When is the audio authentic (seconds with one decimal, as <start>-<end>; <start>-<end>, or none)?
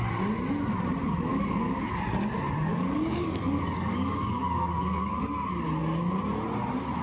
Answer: 0.0-1.3; 1.9-2.7; 5.2-7.0